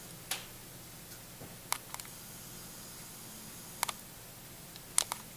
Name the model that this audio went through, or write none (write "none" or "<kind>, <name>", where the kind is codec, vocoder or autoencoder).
none